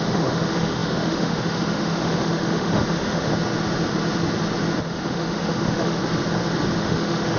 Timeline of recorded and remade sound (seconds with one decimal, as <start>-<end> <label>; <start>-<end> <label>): 0.0-3.3 remade; 3.3-4.8 recorded; 4.8-6.0 remade; 6.0-6.8 recorded; 6.8-7.4 remade